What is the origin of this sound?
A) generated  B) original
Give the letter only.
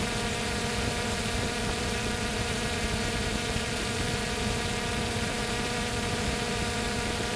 A